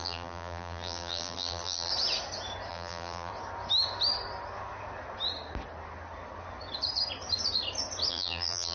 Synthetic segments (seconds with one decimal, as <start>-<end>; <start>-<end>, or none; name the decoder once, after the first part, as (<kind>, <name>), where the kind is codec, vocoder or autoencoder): 0.0-1.9 (vocoder, BigVGAN v2); 2.7-3.3; 8.1-8.7